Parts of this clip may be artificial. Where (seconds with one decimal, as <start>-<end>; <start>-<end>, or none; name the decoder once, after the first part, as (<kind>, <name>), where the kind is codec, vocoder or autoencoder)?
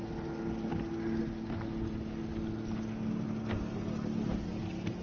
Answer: none